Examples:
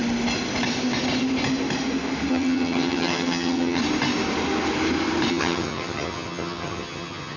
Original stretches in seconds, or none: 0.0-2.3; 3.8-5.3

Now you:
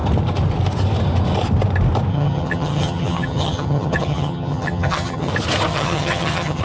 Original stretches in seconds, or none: 0.0-2.1; 5.3-5.7

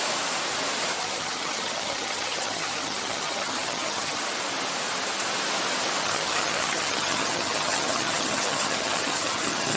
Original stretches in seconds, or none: 0.0-1.0; 4.2-6.0